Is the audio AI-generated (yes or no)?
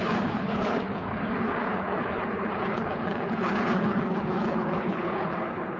yes